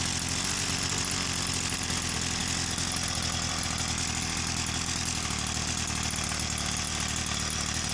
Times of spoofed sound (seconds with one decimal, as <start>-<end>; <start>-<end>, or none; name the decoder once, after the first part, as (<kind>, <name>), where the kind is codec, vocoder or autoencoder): none